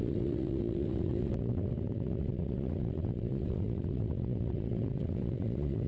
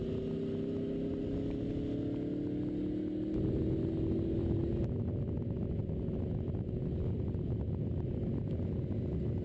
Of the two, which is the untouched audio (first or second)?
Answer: second